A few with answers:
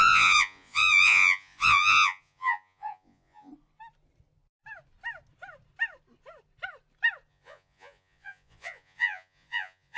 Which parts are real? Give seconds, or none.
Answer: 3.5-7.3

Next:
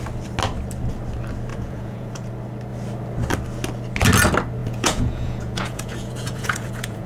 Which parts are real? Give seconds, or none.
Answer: 0.0-1.5; 2.3-4.6

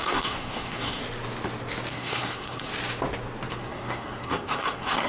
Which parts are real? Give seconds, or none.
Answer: 1.0-1.9; 2.7-3.5

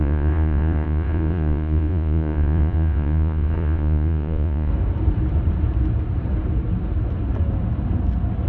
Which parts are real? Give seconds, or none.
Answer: 4.7-8.5

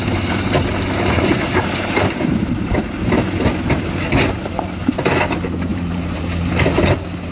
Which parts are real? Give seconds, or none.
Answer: 2.8-5.7; 6.8-7.3

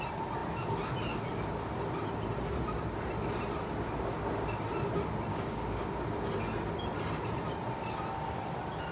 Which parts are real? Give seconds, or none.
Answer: 0.0-5.3; 5.9-8.9

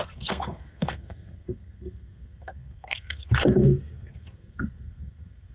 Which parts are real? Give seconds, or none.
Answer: none

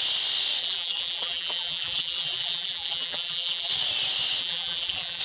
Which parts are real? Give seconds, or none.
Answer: 0.0-0.6; 3.7-4.4